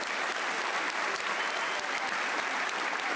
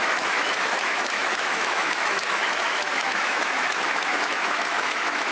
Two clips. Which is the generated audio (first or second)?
second